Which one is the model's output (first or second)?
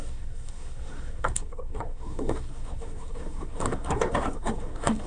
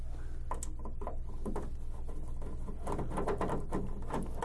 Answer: first